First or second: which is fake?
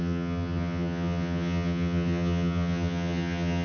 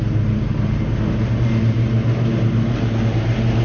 first